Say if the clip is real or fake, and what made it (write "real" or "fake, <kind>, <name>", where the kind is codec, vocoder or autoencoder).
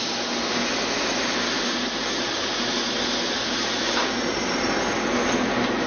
real